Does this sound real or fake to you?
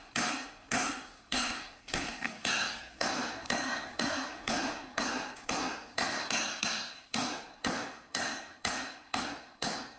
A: fake